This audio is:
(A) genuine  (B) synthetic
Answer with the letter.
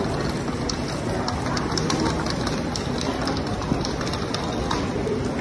A